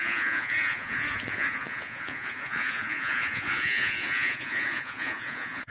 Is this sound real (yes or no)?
no